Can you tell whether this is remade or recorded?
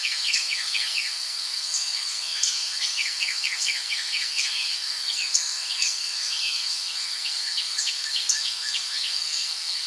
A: remade